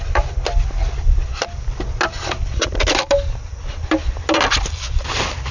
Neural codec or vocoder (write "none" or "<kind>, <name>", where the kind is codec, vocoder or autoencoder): none